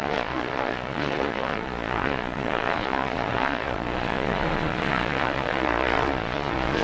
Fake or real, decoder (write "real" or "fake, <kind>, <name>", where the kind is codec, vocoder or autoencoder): fake, vocoder, Vocos